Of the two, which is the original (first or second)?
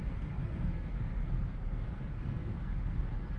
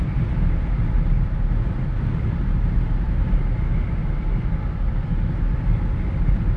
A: second